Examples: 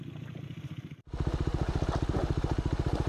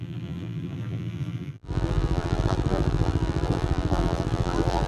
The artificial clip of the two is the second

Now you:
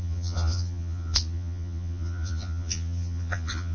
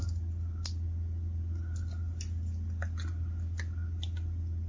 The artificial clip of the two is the first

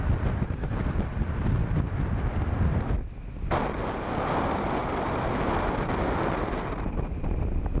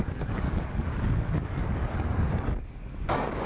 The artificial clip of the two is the second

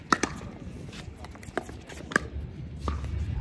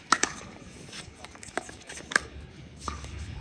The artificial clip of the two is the second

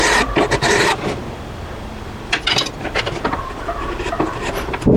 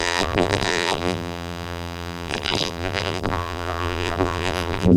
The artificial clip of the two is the second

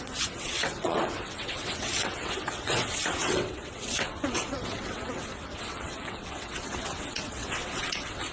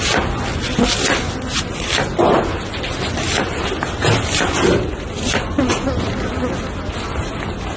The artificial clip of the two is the first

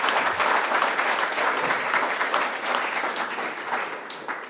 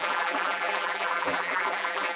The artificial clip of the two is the second